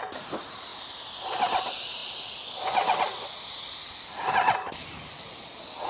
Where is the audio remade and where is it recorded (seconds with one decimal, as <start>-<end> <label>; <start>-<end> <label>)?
0.0-5.9 recorded